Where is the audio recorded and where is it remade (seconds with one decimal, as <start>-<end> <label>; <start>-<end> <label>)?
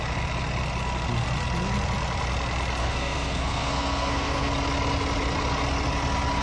0.0-2.8 recorded; 2.8-4.5 remade; 4.5-6.4 recorded